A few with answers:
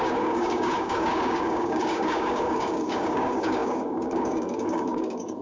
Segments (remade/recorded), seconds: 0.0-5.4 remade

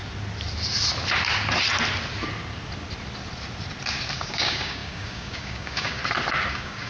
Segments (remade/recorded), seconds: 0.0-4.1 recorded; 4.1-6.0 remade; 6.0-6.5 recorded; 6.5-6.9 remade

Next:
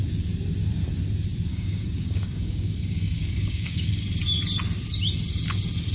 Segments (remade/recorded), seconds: 0.0-1.5 recorded; 1.5-4.0 remade; 4.0-5.9 recorded

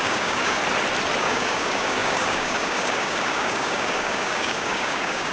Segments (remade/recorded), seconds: 0.0-0.6 remade; 0.6-1.2 recorded; 1.2-5.3 remade